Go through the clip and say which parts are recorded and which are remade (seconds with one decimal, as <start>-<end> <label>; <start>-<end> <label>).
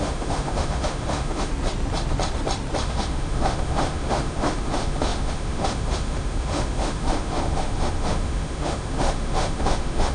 0.0-1.5 remade; 1.5-2.8 recorded; 2.8-10.1 remade